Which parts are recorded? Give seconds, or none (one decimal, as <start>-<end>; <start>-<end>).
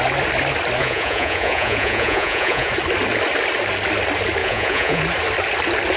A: 0.0-0.8; 2.7-4.4; 5.0-6.0